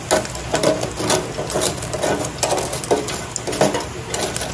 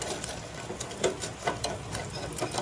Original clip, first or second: first